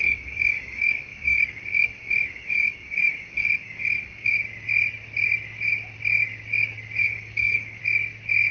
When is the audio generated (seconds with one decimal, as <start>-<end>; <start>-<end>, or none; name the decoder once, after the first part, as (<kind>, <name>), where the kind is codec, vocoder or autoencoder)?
0.0-4.3 (codec, DAC); 7.0-7.8